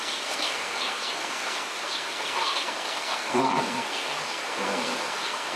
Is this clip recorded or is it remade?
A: remade